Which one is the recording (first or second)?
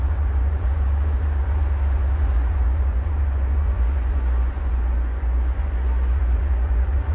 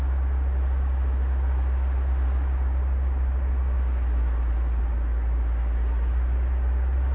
second